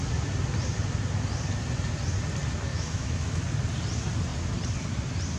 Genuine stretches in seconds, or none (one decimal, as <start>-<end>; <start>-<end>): 0.0-2.7; 3.4-5.4